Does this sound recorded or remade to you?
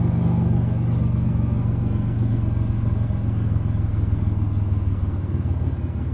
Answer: remade